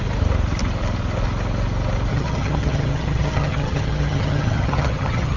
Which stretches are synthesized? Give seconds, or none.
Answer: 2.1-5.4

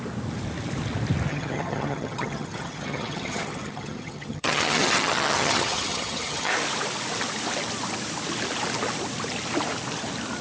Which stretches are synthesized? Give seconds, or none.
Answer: 1.3-6.5

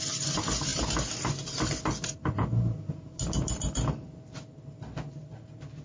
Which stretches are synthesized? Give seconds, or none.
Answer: none

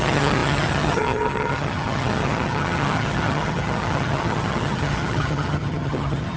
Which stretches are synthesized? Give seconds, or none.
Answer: 0.0-6.4